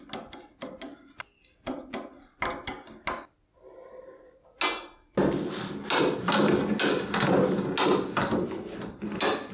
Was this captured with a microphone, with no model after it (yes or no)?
yes